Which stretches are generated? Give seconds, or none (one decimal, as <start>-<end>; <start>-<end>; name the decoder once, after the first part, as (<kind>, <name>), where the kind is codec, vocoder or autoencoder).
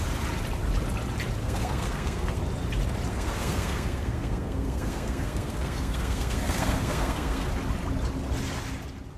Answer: 1.4-2.4 (codec, SNAC); 3.1-7.5